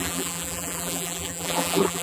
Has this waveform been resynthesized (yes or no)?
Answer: yes